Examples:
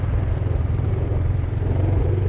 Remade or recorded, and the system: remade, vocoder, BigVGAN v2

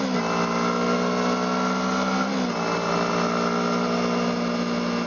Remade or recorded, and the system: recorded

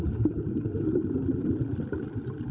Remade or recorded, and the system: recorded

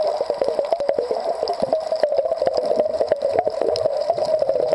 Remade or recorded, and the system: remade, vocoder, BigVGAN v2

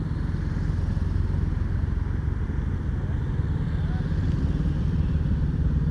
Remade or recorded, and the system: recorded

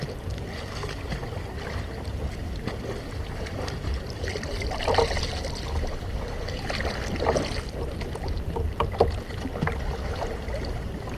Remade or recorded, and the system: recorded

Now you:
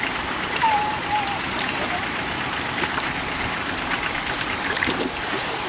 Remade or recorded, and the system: remade, vocoder, BigVGAN v2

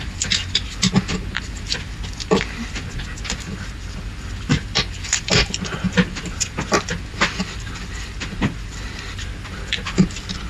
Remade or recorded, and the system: remade, vocoder, BigVGAN v2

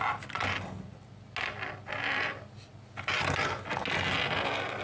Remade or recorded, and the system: recorded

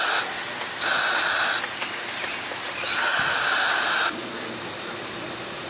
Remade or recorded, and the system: recorded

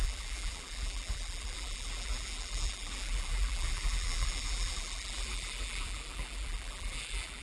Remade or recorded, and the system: remade, vocoder, BigVGAN v2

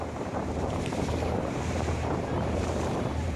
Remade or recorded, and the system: remade, vocoder, BigVGAN v2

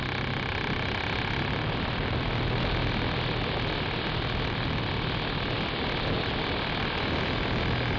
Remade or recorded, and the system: recorded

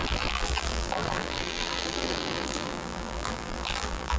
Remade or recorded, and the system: remade, vocoder, BigVGAN v2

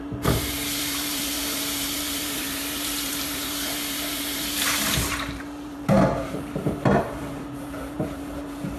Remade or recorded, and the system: remade, vocoder, BigVGAN v2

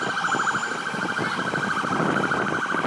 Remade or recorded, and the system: recorded